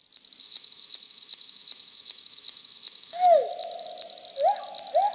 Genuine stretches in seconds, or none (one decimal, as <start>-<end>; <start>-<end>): 0.0-0.4; 3.5-5.1